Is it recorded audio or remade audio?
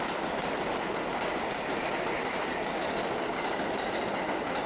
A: recorded